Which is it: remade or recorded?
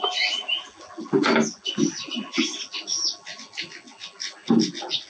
recorded